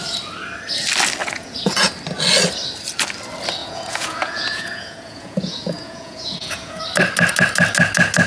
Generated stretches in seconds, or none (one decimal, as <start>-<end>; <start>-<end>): 1.2-1.9; 3.6-6.8